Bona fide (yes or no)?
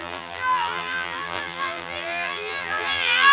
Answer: no